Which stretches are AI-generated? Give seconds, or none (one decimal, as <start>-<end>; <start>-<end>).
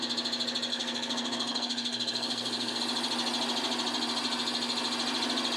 0.7-2.8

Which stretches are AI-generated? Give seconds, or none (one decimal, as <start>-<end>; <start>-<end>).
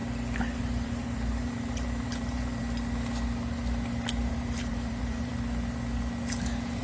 0.6-2.6; 4.3-5.3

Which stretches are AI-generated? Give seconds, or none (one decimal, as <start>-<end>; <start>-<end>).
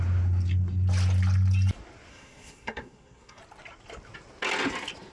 2.1-3.4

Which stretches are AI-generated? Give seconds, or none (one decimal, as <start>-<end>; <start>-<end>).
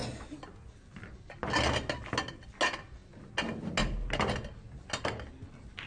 none